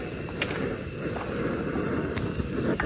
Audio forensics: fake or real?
real